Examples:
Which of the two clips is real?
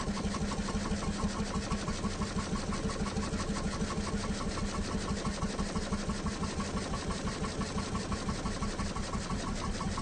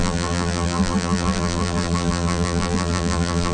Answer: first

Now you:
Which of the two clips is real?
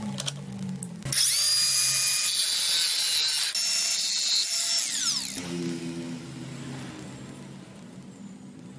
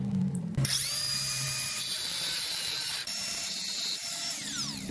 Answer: first